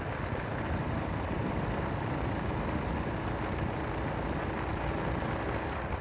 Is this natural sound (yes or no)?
yes